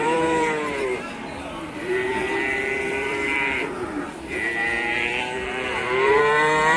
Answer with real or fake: fake